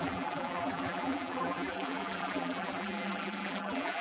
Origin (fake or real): fake